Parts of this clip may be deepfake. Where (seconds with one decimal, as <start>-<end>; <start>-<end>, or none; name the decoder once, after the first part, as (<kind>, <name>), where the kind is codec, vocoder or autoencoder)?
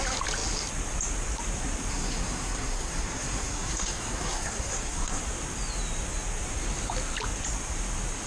1.9-5.2 (codec, SNAC)